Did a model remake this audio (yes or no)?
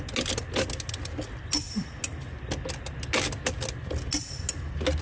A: no